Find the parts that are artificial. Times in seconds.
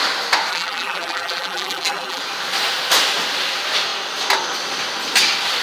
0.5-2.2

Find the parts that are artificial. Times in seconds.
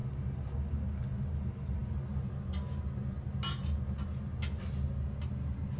none